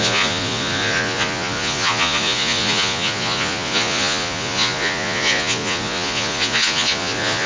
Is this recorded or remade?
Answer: remade